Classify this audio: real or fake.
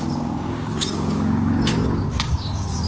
fake